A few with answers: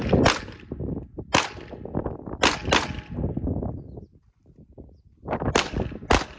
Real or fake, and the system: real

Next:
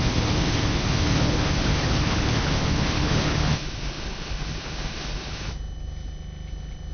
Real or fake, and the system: fake, codec, HILCodec